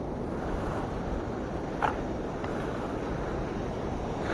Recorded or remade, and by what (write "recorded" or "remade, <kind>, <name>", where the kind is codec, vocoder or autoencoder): recorded